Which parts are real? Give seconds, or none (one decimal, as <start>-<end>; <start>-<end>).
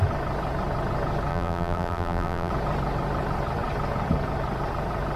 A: 0.0-1.3; 2.5-5.2